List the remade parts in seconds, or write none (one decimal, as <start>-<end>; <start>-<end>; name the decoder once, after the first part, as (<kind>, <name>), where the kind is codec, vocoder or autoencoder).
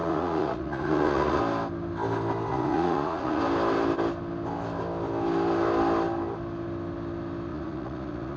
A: 0.0-1.4 (vocoder, Vocos); 2.5-3.4; 7.5-8.4